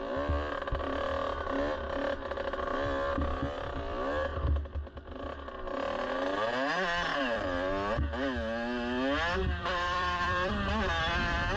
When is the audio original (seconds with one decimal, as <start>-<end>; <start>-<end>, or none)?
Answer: 0.0-7.1; 7.7-9.4; 10.5-11.6